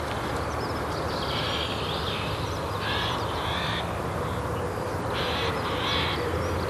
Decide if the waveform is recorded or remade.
recorded